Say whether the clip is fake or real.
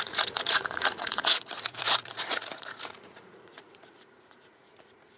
fake